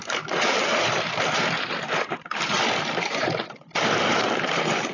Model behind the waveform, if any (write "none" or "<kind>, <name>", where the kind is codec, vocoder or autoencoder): vocoder, BigVGAN v2